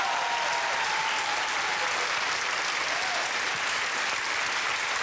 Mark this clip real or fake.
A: real